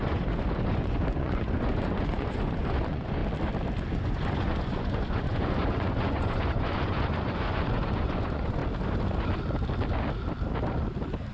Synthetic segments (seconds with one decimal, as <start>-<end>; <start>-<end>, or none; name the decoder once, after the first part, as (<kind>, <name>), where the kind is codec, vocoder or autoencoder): 0.0-3.2 (vocoder, Vocos); 3.9-8.6